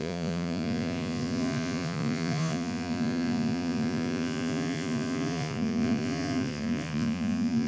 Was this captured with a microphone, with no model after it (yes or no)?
no